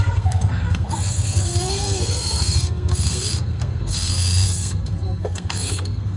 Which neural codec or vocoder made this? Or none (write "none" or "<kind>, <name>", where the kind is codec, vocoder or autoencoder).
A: codec, SNAC